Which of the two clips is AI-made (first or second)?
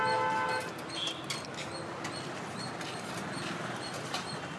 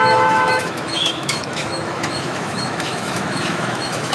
second